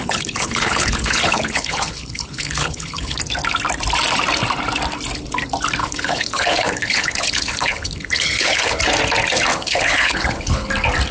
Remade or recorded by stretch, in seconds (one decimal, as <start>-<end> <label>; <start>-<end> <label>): 0.0-3.2 remade; 3.2-5.8 recorded; 5.8-8.8 remade; 8.8-9.5 recorded; 9.5-10.7 remade; 10.7-11.1 recorded